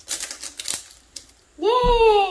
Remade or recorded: recorded